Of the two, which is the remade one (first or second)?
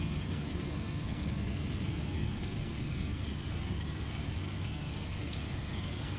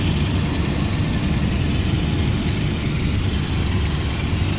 first